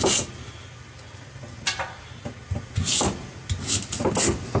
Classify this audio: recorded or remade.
recorded